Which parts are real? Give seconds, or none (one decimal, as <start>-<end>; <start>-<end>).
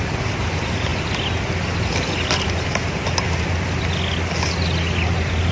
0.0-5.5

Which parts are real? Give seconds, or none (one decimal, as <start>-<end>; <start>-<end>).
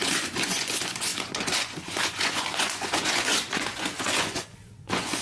none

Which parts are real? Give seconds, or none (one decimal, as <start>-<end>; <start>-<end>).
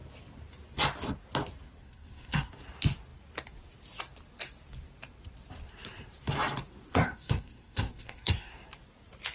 0.0-1.8; 2.5-6.9; 8.5-9.3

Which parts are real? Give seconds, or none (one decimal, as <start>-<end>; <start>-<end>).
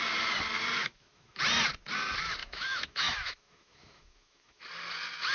0.0-0.8; 1.4-2.4; 4.6-5.3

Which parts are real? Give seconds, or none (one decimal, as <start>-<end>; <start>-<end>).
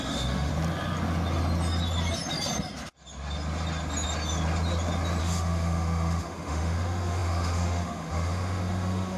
0.5-5.2